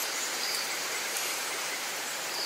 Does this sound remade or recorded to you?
remade